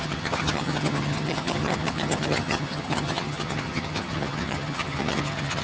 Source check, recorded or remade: remade